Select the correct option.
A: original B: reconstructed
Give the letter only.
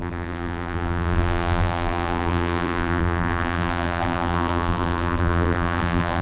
B